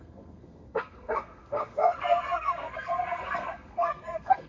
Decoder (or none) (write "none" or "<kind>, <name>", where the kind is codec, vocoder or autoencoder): codec, SNAC